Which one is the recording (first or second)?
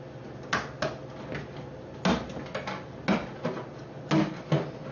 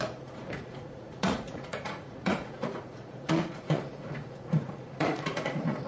first